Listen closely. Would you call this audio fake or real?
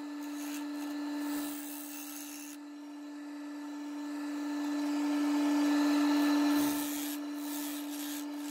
real